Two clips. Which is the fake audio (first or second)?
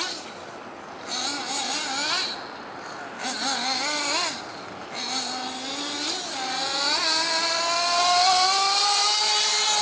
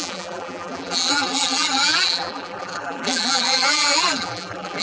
second